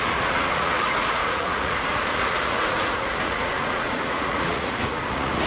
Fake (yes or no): yes